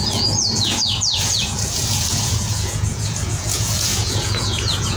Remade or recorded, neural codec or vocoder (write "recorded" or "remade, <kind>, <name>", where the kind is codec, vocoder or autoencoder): remade, vocoder, Vocos